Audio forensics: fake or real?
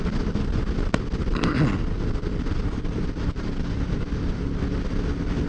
real